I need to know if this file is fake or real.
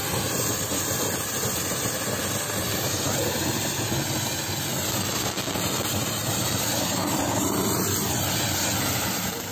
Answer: real